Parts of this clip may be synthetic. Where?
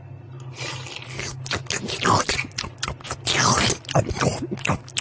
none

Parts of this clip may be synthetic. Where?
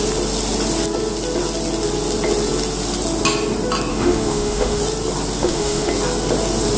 3.9-4.8 (autoencoder, DAC-VAE); 5.4-5.9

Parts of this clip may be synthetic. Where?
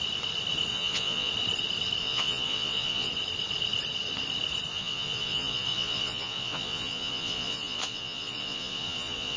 0.7-1.3 (vocoder, Vocos); 2.0-3.1; 4.7-9.4